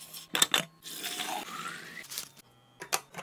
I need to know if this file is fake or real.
real